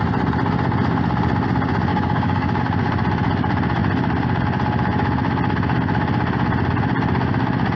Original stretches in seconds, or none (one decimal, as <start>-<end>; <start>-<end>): 0.0-1.9; 2.6-7.8